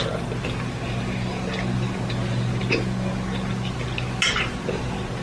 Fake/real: real